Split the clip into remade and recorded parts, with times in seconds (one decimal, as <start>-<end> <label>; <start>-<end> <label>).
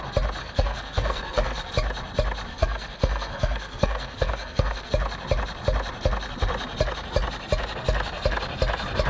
0.0-0.4 recorded; 0.4-1.7 remade; 1.7-2.5 recorded; 2.5-4.9 remade; 4.9-9.1 recorded